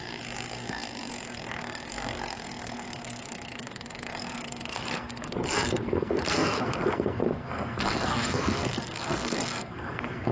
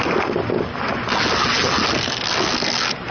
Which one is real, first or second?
second